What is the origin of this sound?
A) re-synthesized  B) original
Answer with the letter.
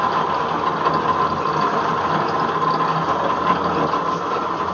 B